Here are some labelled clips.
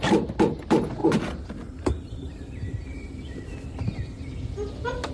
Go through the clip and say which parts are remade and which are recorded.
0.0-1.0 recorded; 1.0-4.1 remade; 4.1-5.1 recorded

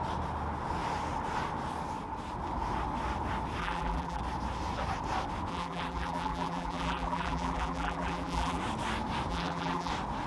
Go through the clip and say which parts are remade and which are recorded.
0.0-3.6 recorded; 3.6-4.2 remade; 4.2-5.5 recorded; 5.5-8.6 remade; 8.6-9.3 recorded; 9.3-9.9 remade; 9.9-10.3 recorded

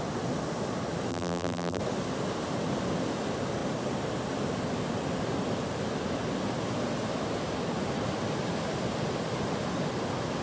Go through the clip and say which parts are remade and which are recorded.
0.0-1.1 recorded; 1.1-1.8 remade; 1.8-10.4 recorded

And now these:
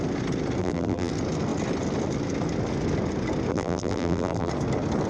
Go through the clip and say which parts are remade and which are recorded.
0.0-0.6 recorded; 0.6-1.1 remade; 1.1-3.5 recorded; 3.5-4.5 remade; 4.5-5.1 recorded